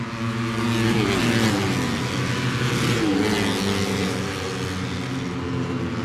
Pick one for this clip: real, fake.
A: real